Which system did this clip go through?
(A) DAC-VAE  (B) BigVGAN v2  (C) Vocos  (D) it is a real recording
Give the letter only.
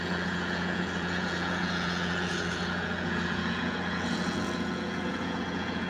C